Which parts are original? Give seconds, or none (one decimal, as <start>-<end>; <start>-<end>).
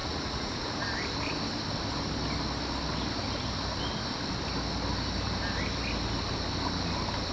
0.8-7.3